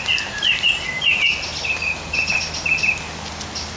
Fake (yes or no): no